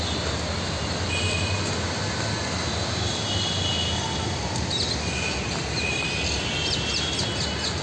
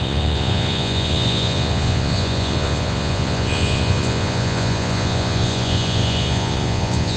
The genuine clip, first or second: first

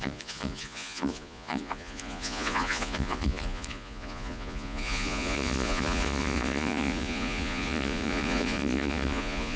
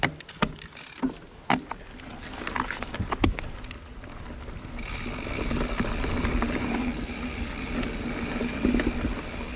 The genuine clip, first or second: second